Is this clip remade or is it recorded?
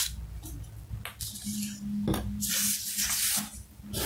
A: recorded